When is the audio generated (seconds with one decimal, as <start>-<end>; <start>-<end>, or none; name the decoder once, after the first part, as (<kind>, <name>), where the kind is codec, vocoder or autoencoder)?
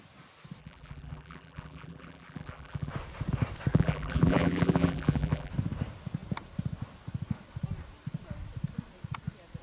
0.6-2.9 (vocoder, BigVGAN v2); 3.7-5.5